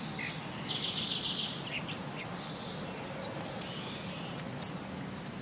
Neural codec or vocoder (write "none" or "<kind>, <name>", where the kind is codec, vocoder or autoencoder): none